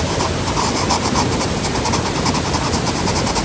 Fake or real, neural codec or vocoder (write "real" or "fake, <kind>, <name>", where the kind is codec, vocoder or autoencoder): real